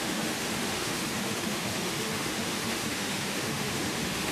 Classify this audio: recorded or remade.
remade